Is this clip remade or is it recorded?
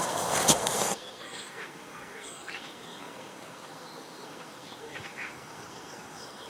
remade